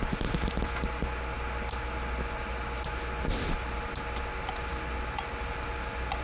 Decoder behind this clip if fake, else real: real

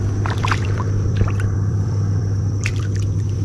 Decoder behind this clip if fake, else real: fake, vocoder, BigVGAN v2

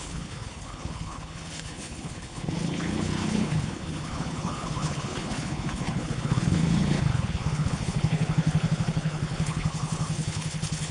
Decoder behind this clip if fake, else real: fake, codec, HILCodec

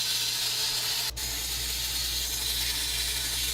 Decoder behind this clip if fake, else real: real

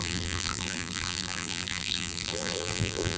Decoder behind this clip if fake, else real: fake, vocoder, BigVGAN v2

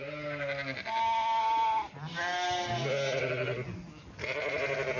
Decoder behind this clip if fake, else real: real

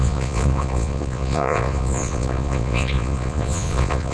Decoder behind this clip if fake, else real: fake, vocoder, Vocos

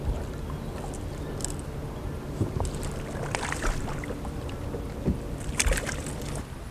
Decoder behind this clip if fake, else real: real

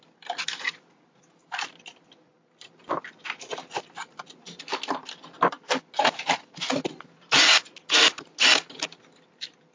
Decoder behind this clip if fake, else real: real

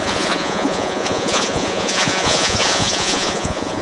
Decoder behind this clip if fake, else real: fake, vocoder, Vocos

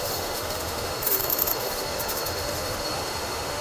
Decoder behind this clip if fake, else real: fake, autoencoder, DAC-VAE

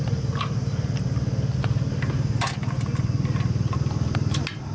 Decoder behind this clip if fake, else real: real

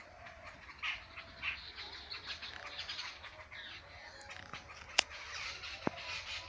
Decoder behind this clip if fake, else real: real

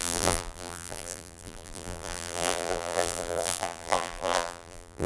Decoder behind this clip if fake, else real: fake, vocoder, BigVGAN v2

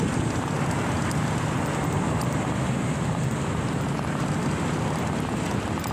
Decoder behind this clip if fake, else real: real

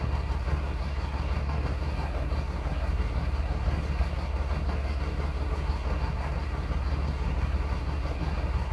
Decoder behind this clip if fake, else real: fake, codec, SNAC